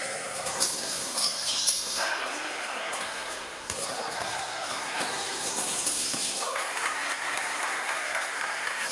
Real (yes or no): no